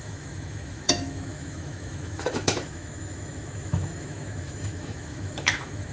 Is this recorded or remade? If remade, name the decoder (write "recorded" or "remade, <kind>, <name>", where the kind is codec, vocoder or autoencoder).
remade, autoencoder, DAC-VAE